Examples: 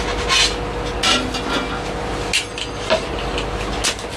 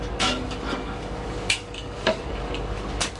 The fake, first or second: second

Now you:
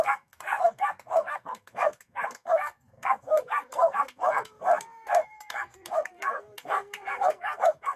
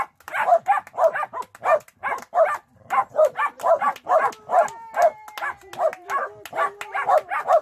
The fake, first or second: first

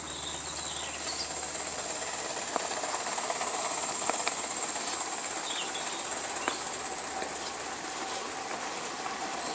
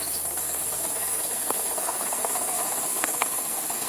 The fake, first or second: second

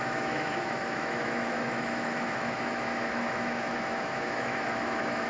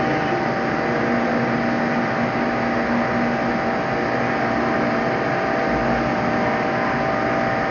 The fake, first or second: first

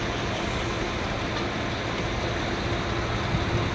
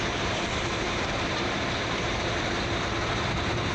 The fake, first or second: second